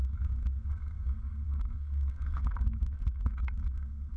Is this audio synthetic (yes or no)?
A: yes